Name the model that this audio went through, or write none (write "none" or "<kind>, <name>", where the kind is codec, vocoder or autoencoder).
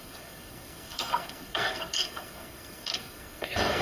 codec, SNAC